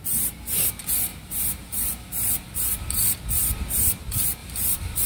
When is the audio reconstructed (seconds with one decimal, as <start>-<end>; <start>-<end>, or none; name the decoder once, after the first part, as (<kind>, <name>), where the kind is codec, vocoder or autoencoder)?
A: 1.1-3.0 (vocoder, BigVGAN v2); 4.4-5.1